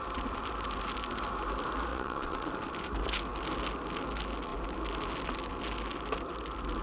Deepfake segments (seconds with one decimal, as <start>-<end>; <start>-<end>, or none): 1.9-2.5